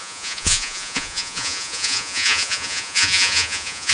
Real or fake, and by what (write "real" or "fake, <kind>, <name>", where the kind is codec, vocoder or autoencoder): fake, vocoder, Vocos